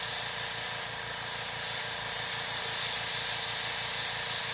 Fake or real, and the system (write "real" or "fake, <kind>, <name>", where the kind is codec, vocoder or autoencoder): real